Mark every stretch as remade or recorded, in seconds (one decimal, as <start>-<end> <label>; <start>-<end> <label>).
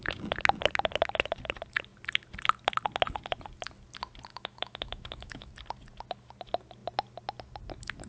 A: 0.0-4.3 recorded; 4.3-5.5 remade; 5.5-8.1 recorded